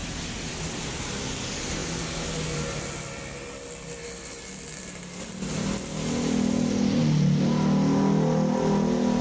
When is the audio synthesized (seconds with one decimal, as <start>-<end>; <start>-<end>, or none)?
0.0-0.5